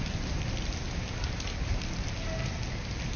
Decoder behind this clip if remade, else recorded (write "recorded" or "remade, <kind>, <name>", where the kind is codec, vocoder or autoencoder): recorded